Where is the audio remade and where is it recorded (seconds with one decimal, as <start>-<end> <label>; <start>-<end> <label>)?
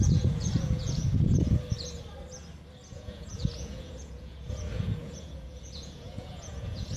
0.0-1.0 remade; 1.0-2.9 recorded; 2.9-7.0 remade